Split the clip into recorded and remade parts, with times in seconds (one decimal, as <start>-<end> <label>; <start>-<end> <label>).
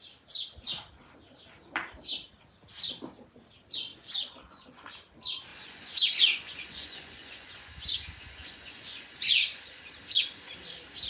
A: 0.0-3.9 recorded; 3.9-4.9 remade; 4.9-5.5 recorded; 5.5-9.8 remade; 9.8-11.1 recorded